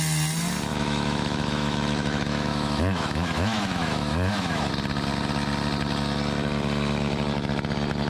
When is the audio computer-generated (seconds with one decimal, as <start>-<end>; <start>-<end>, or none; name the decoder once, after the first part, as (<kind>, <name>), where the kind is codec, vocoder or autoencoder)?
0.7-4.7 (autoencoder, DAC-VAE)